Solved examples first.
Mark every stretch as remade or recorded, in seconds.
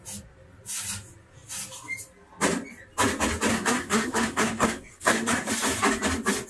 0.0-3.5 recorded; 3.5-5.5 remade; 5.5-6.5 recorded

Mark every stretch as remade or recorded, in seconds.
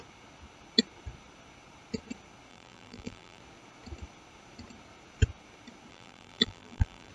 0.0-2.5 recorded; 2.5-3.4 remade; 3.4-5.9 recorded; 5.9-7.1 remade